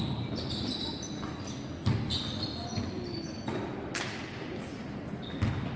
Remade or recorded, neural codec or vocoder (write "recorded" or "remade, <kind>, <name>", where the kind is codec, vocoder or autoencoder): recorded